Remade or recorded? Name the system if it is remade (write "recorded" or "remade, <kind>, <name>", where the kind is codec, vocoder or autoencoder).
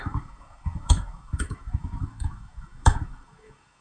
remade, autoencoder, DAC-VAE